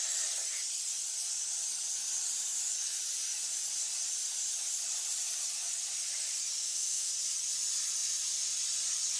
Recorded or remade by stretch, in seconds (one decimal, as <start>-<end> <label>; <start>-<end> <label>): 0.0-6.6 recorded; 6.6-7.1 remade; 7.1-9.2 recorded